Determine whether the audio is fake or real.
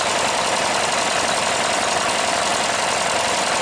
real